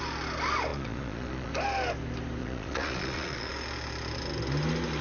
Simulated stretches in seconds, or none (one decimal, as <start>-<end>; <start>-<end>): 0.7-1.5; 2.4-3.5